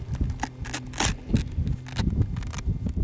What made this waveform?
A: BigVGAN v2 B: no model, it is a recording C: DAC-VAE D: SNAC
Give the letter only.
B